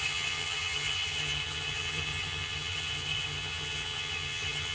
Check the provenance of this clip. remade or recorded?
remade